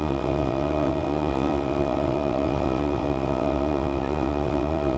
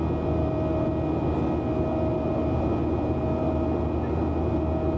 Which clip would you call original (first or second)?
second